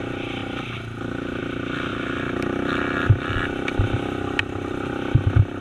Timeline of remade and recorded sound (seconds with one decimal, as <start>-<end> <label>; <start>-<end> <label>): 0.0-5.6 recorded